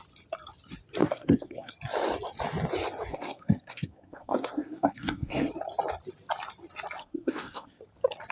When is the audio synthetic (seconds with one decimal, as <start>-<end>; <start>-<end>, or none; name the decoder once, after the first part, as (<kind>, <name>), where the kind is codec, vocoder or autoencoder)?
1.0-1.7 (codec, SNAC); 3.1-5.5; 7.0-7.8